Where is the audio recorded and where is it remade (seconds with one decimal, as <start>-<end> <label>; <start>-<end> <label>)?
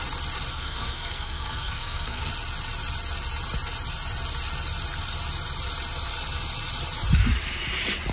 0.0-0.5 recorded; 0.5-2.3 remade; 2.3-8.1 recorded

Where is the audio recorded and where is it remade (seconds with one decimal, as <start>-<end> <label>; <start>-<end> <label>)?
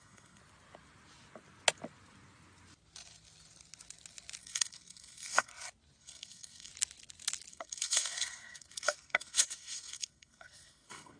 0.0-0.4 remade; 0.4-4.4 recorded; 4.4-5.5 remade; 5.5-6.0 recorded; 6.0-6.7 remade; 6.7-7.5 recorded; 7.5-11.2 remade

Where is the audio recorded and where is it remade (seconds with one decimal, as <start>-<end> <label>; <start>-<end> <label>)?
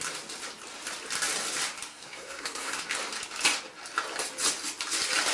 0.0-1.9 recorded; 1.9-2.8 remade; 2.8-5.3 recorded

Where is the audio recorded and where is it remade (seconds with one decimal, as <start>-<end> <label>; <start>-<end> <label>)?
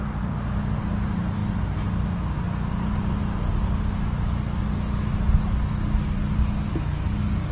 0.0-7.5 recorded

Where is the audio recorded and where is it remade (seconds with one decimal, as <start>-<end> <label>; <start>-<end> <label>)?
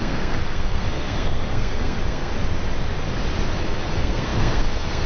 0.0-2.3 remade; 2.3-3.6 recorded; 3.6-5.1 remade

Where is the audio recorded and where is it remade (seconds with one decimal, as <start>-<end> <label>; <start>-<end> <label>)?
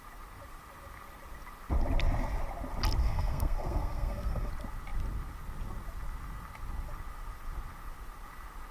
0.0-3.0 recorded; 3.0-4.5 remade; 4.5-8.7 recorded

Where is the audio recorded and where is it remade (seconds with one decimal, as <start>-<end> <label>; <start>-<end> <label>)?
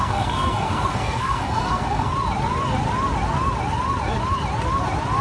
0.0-2.1 remade; 2.1-5.2 recorded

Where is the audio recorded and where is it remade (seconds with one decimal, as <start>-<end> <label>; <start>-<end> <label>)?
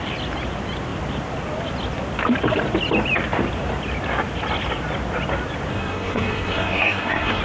0.0-5.7 recorded; 5.7-7.4 remade